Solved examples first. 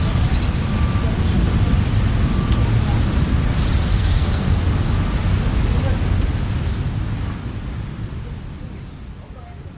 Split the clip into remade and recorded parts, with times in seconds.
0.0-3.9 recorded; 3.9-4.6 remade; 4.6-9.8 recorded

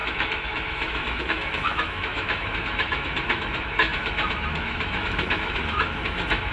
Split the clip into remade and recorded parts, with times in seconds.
0.0-6.5 remade

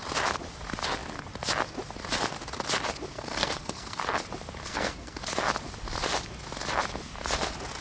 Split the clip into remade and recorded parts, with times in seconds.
0.0-3.1 recorded; 3.1-4.0 remade; 4.0-4.6 recorded; 4.6-5.2 remade; 5.2-7.8 recorded